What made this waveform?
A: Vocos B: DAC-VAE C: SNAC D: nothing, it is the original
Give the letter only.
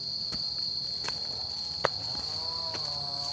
D